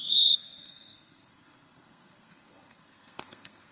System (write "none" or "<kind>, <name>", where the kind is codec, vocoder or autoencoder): codec, SNAC